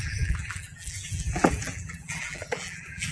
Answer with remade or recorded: remade